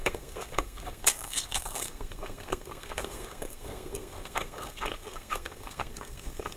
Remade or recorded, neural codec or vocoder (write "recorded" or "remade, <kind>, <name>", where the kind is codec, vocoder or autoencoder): remade, codec, SNAC